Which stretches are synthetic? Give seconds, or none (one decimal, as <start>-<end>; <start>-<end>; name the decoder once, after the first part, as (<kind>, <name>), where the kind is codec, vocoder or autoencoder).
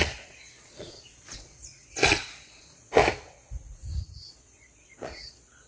0.0-3.0 (vocoder, Vocos); 4.3-5.7